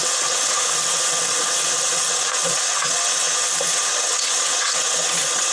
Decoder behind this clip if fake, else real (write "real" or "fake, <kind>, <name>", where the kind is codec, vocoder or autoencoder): fake, vocoder, WaveNeXt